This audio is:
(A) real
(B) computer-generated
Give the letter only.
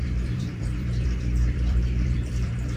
B